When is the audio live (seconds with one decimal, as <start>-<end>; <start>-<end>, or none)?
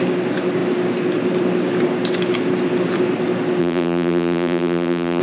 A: 0.0-3.6